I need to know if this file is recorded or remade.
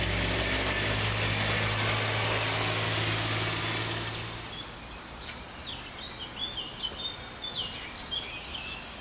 recorded